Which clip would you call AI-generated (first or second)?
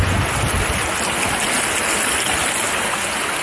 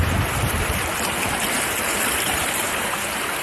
second